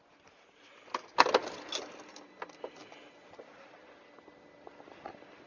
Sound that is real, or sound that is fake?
real